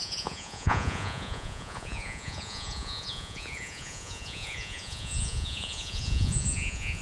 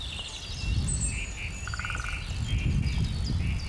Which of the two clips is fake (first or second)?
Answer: first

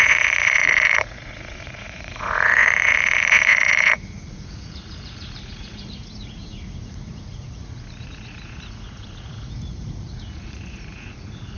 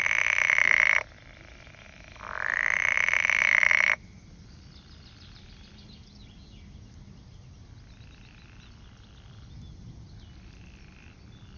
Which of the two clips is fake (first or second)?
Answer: first